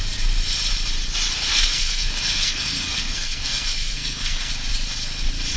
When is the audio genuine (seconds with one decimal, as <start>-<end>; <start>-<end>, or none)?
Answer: 0.0-1.5; 4.5-5.6